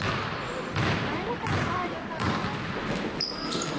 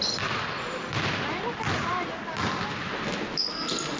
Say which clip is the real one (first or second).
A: second